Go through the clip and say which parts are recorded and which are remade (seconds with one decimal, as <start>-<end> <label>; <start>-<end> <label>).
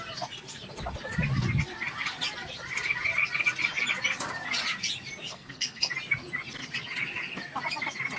0.0-5.3 recorded; 5.3-5.9 remade; 5.9-8.2 recorded